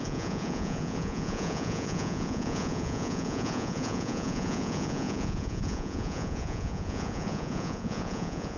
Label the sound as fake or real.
fake